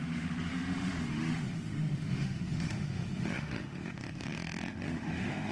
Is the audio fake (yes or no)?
yes